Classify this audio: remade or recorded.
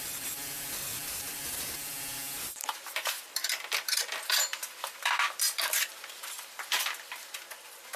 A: remade